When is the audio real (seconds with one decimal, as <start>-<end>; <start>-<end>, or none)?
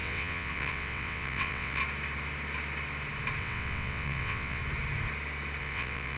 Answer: 1.8-3.4; 4.6-5.6